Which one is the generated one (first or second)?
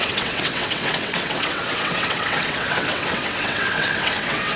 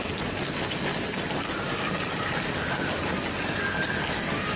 first